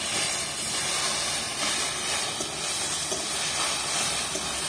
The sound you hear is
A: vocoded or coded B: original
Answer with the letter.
B